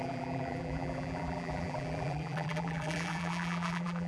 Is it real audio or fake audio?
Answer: fake